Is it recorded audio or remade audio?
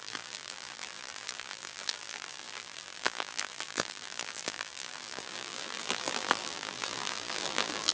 remade